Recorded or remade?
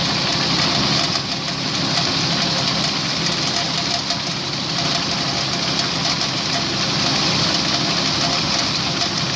recorded